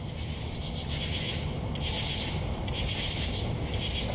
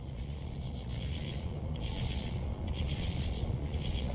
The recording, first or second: first